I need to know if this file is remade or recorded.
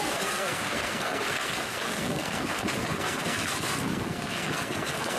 remade